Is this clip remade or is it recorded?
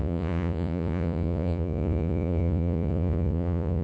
remade